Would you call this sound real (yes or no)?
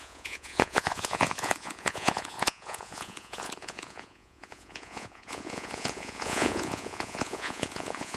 no